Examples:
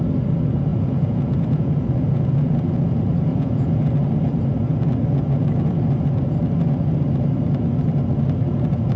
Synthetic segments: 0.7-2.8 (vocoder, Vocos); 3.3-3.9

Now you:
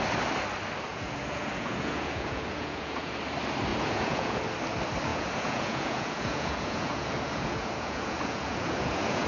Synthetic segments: 0.9-3.2 (vocoder, Vocos); 3.7-4.4; 5.1-9.3

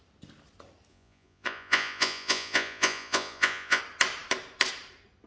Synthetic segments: 0.9-3.8 (vocoder, Vocos)

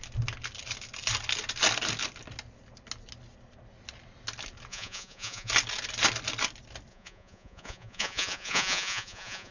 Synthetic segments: 4.7-5.5 (vocoder, Vocos); 6.9-9.5